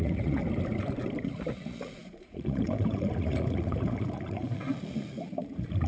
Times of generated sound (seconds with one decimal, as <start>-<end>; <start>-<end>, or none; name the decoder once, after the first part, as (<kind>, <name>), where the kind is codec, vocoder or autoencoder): 0.0-0.4 (vocoder, Vocos); 1.2-5.9